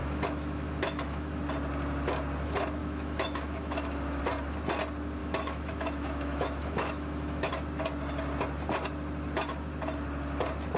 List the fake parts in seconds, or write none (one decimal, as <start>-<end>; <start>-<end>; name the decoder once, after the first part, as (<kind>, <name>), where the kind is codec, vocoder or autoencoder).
0.0-1.4 (autoencoder, DAC-VAE); 2.8-4.2; 5.2-7.5